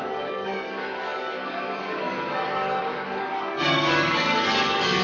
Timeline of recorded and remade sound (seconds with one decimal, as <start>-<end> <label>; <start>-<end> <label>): 0.0-5.0 remade